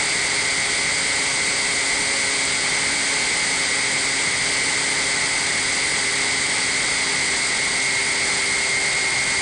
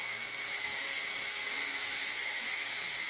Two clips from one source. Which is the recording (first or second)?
first